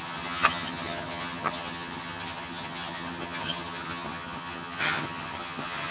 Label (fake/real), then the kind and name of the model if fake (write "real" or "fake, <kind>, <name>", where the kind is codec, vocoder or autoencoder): fake, vocoder, HiFi-GAN